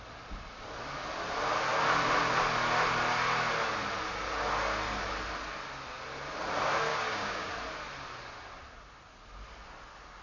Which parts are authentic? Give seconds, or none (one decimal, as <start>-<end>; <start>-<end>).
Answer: 0.0-6.9; 7.5-10.2